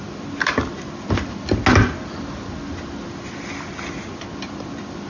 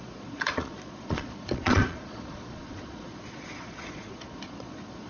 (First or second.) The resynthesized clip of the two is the second